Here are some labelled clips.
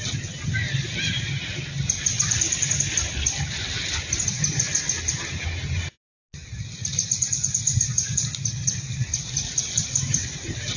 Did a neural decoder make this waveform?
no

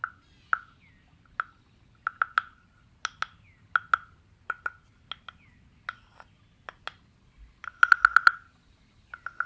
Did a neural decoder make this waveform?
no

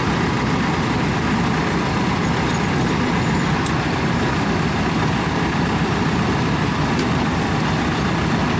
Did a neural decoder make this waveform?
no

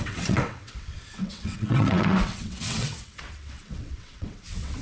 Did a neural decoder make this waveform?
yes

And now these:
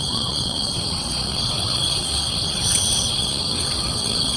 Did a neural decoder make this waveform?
yes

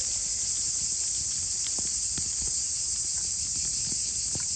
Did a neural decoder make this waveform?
no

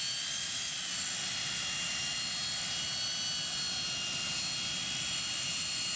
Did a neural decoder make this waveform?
no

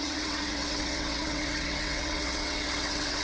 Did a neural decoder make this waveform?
yes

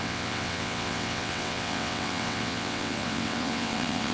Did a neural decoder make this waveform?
yes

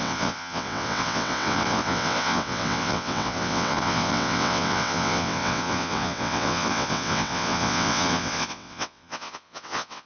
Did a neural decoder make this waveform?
yes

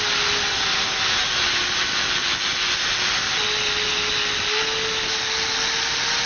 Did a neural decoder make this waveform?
no